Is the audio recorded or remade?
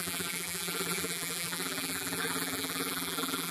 remade